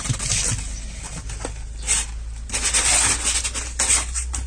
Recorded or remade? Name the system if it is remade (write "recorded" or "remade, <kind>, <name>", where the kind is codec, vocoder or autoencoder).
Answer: recorded